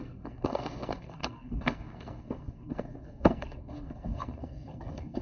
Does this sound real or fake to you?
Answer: fake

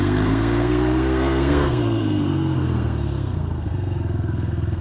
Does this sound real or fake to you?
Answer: fake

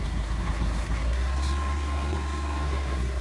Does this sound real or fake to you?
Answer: fake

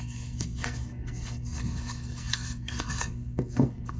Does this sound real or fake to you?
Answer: fake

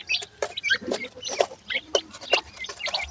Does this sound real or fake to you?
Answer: real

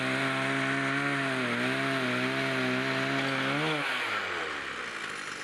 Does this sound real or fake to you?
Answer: real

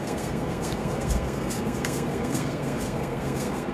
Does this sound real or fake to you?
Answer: fake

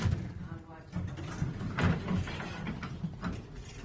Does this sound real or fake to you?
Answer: real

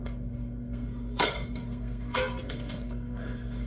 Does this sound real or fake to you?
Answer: fake